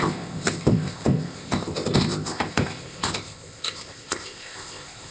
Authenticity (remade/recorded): remade